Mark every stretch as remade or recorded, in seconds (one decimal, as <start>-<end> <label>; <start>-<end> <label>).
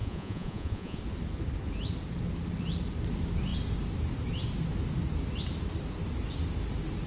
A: 0.0-1.0 remade; 1.0-7.1 recorded